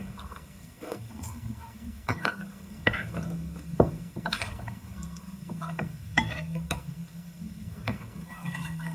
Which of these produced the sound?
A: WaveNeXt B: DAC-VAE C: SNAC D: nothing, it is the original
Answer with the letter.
C